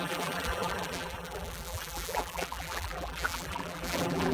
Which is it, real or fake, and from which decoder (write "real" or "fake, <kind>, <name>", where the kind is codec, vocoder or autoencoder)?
fake, vocoder, BigVGAN v2